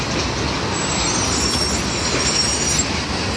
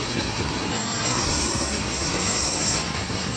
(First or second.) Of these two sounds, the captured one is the first